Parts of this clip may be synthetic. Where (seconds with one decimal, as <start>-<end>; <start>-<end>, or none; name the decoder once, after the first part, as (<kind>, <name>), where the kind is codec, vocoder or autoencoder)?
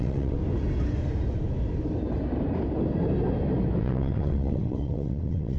0.0-0.4 (vocoder, WaveNeXt); 3.8-5.6